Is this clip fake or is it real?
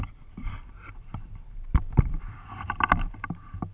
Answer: fake